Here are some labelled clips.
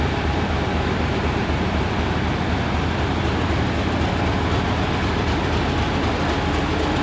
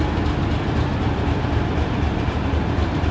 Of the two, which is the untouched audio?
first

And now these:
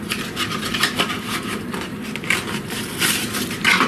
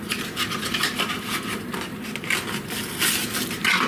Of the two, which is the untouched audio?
second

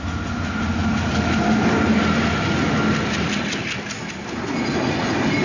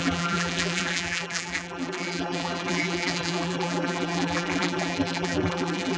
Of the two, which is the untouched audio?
first